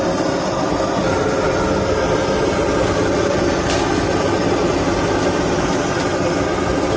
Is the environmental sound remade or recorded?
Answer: recorded